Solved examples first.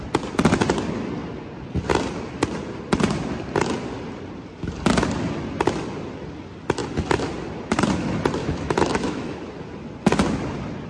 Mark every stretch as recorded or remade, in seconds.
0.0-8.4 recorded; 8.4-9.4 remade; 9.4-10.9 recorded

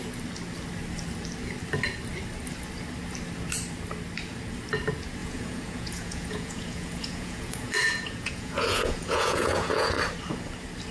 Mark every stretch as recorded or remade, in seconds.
0.0-5.2 recorded; 5.2-10.0 remade; 10.0-10.9 recorded

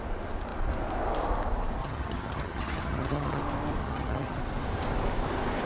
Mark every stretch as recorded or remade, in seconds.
0.0-1.8 recorded; 1.8-3.4 remade; 3.4-3.8 recorded; 3.8-4.4 remade; 4.4-5.7 recorded

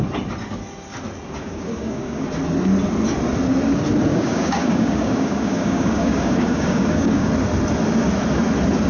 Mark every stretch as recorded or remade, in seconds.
0.0-1.4 recorded; 1.4-2.3 remade; 2.3-4.1 recorded; 4.1-7.3 remade; 7.3-8.9 recorded